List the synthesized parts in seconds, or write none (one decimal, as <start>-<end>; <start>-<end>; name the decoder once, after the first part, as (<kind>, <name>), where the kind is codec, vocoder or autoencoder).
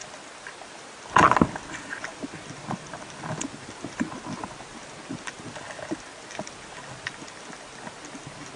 none